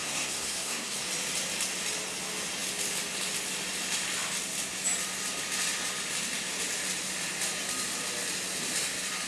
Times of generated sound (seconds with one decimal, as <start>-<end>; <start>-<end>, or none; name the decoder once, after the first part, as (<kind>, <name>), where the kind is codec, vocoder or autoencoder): 0.0-1.0 (codec, SNAC)